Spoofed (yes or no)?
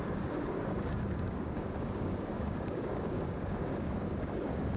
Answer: yes